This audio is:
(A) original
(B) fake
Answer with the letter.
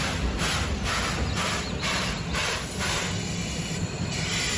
A